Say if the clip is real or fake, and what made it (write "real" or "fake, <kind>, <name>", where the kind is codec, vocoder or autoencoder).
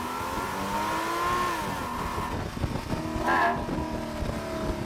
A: real